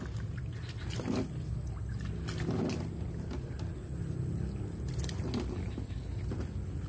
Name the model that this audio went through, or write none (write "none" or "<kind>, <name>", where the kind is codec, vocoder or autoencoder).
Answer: none